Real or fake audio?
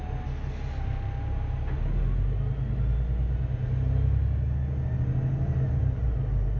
real